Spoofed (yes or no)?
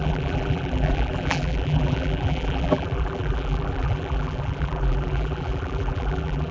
yes